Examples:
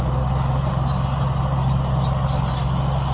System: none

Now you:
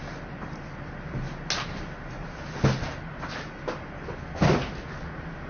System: none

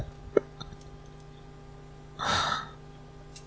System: none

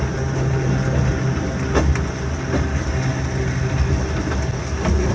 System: none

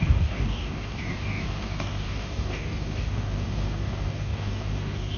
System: codec, DAC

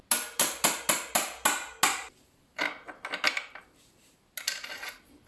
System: none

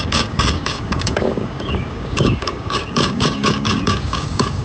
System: codec, DAC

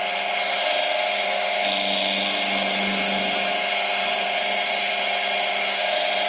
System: none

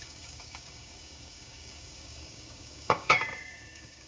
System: codec, DAC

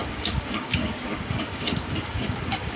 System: codec, DAC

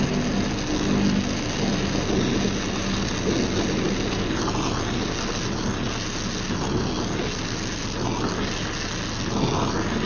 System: none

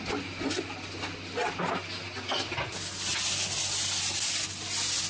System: none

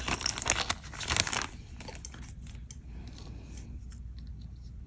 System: none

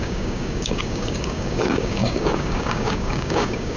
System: codec, DAC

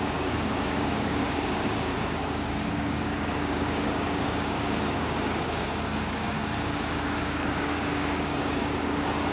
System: codec, DAC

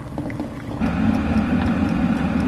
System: none